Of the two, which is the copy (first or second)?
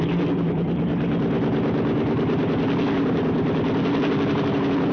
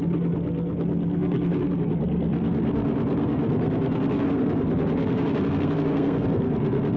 second